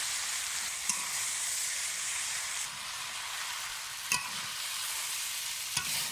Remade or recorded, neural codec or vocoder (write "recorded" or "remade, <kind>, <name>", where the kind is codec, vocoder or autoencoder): remade, vocoder, BigVGAN v2